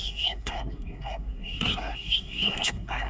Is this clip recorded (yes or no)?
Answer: no